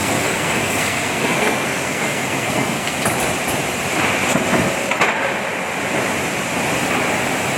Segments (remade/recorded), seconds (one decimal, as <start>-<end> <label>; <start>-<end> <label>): 0.0-3.0 remade; 3.0-7.6 recorded